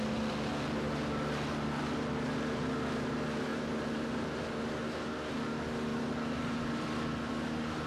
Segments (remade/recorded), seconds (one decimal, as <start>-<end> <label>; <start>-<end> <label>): 0.0-3.5 recorded; 3.5-4.5 remade; 4.5-5.9 recorded; 5.9-6.7 remade; 6.7-7.9 recorded

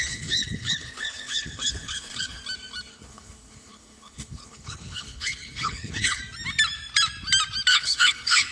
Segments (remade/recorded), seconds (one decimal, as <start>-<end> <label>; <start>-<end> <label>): 0.0-2.4 remade; 2.4-2.9 recorded; 2.9-6.2 remade; 6.2-7.7 recorded; 7.7-8.5 remade

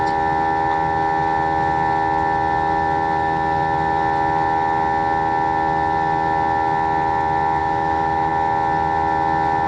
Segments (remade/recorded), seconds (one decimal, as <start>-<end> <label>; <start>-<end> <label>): 0.0-7.6 recorded; 7.6-8.3 remade; 8.3-9.7 recorded

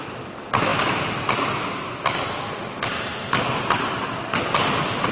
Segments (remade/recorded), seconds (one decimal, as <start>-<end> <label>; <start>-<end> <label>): 0.0-5.1 recorded

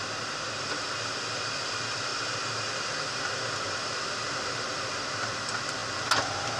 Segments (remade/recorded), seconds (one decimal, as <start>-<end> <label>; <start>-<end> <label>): 0.0-6.6 recorded

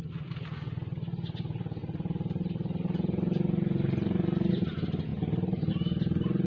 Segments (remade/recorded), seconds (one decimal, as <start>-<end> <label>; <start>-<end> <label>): 0.0-1.8 recorded; 1.8-4.5 remade; 4.5-5.1 recorded; 5.1-5.7 remade; 5.7-6.5 recorded

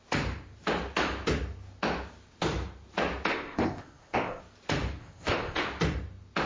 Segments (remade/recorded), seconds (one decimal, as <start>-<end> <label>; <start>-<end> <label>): 0.0-3.3 recorded; 3.3-4.4 remade; 4.4-5.0 recorded; 5.0-5.7 remade; 5.7-6.5 recorded

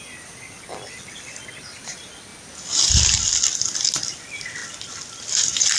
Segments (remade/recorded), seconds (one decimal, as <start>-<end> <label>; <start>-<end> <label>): 0.0-5.8 recorded